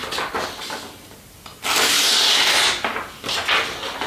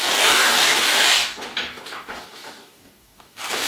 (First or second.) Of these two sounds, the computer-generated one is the second